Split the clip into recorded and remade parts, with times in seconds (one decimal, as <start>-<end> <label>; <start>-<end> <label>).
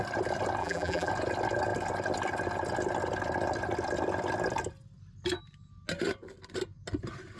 0.0-0.6 recorded; 0.6-1.1 remade; 1.1-7.4 recorded